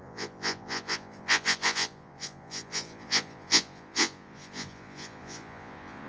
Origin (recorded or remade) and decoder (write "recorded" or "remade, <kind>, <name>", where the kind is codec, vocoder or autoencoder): remade, vocoder, Vocos